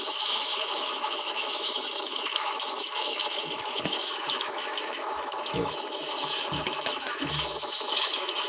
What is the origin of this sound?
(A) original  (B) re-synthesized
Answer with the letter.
B